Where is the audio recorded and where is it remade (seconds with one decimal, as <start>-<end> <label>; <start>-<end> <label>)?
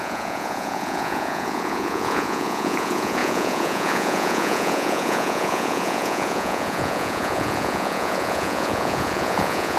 0.0-9.8 remade